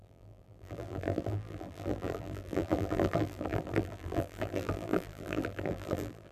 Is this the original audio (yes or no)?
no